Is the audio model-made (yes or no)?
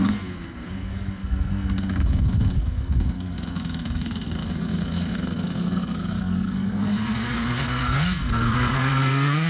yes